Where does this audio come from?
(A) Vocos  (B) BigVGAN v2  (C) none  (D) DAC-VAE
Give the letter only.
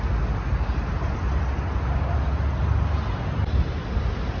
C